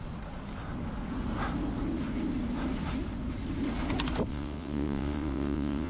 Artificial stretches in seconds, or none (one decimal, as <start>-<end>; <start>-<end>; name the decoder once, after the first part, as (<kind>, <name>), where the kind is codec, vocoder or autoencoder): 4.3-5.9 (vocoder, WaveNeXt)